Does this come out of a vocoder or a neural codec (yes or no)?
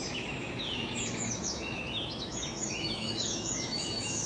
yes